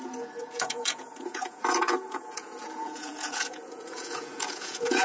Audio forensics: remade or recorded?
remade